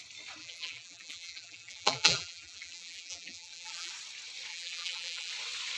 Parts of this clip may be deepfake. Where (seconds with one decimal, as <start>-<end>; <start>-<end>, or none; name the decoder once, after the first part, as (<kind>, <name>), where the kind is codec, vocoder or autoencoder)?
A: 0.4-3.9 (vocoder, BigVGAN v2); 4.5-5.3